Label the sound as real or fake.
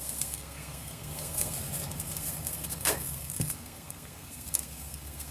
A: fake